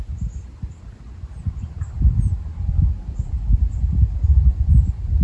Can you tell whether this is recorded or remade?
recorded